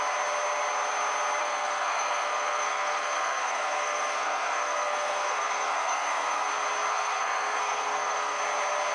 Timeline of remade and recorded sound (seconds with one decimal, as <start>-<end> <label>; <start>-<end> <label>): 0.0-1.4 recorded; 1.4-6.5 remade; 6.5-6.9 recorded; 6.9-8.4 remade; 8.4-8.9 recorded